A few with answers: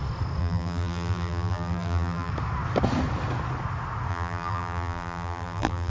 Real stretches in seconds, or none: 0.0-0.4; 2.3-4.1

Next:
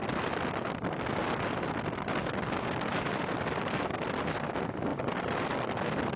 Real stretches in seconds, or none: 0.0-6.2

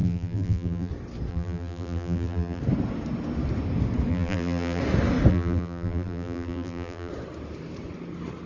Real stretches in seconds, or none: 0.9-1.3; 2.6-4.1; 4.8-5.3; 7.1-8.5

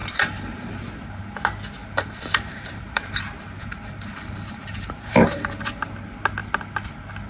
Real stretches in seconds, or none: 1.2-1.8; 5.9-7.3

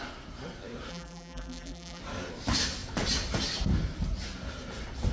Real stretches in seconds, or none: 0.0-0.9; 2.0-5.1

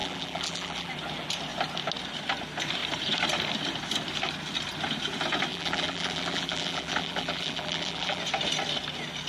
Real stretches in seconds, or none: 0.9-5.5; 8.2-9.3

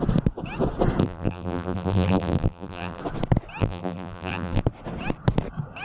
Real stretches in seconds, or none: 0.0-1.0; 3.0-3.6; 4.6-5.8